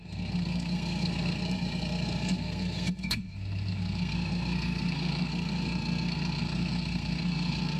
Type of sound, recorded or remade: remade